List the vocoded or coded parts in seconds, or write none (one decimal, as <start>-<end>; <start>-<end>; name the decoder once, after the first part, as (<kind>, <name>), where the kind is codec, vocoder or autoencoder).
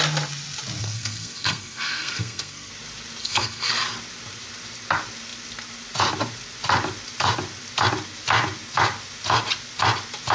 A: 0.8-2.7 (codec, SNAC); 3.2-3.7